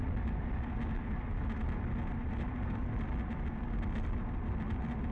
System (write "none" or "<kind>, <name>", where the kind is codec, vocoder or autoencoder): none